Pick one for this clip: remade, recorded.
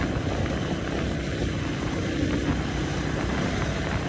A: recorded